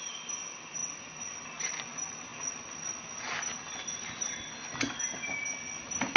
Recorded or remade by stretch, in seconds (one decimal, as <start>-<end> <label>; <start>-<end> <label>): 0.0-6.2 recorded